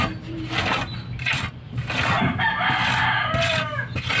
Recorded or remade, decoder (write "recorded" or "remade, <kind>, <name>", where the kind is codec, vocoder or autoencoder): recorded